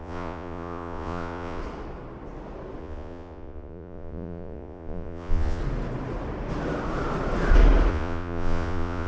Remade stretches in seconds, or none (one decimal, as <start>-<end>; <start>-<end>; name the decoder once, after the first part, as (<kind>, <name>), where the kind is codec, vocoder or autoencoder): 0.0-1.6 (vocoder, Vocos); 2.8-5.6; 7.9-9.1